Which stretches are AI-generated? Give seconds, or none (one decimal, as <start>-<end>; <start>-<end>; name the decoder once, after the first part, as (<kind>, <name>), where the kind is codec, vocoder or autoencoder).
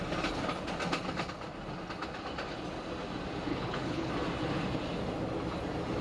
3.5-4.1 (codec, HILCodec)